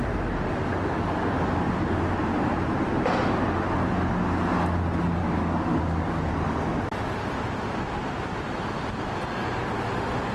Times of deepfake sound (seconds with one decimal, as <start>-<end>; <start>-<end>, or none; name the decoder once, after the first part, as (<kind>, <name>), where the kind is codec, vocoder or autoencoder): 0.7-2.0 (codec, DAC); 5.2-6.3